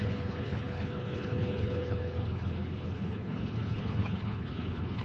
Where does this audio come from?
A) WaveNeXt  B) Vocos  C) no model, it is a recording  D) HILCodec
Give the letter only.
D